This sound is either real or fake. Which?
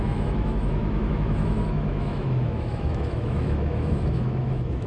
fake